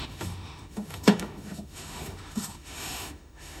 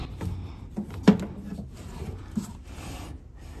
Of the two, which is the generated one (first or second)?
first